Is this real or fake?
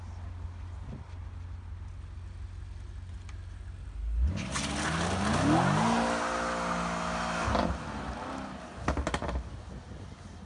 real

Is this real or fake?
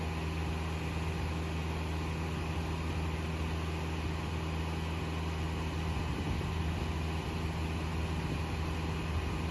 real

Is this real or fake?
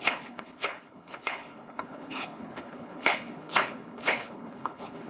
fake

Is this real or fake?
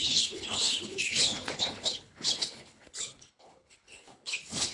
fake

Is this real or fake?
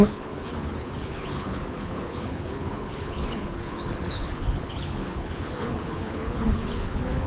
fake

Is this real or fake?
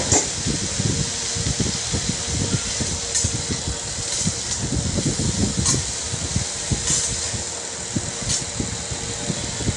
real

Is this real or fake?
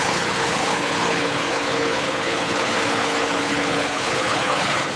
fake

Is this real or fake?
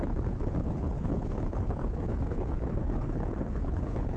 fake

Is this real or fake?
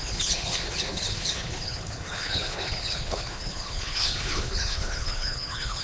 fake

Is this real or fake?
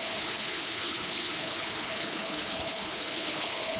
fake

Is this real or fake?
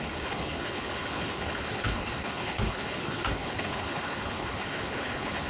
fake